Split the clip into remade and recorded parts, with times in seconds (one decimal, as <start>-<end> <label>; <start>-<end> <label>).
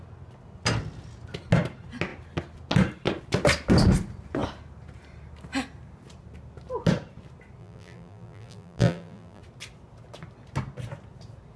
0.0-7.6 recorded; 7.6-9.4 remade; 9.4-11.6 recorded